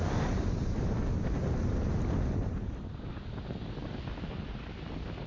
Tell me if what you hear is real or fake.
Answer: real